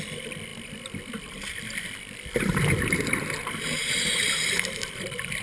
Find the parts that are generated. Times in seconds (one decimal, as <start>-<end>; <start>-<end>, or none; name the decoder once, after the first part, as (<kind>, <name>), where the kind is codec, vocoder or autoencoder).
none